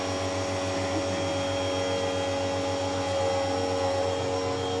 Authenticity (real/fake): real